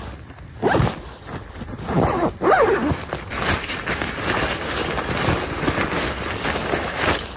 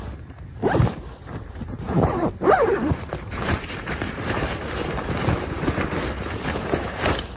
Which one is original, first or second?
first